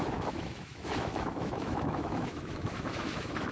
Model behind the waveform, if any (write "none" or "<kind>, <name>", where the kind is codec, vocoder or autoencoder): autoencoder, DAC-VAE